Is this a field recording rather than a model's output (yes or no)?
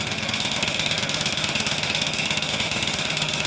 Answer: no